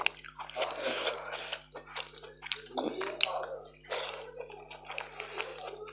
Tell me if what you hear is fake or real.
real